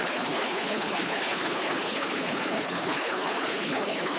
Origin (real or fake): fake